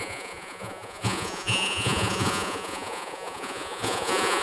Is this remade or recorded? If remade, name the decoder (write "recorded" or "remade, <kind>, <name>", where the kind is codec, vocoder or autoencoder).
remade, vocoder, Vocos